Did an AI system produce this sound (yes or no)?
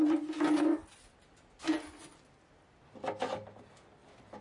no